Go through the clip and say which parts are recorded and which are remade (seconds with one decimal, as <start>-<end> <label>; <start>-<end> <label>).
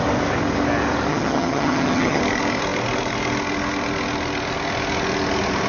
0.0-1.1 recorded; 1.1-2.2 remade; 2.2-5.7 recorded